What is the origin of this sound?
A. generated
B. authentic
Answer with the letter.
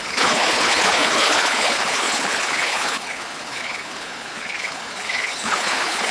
A